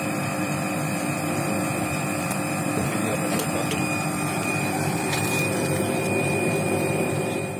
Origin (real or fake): fake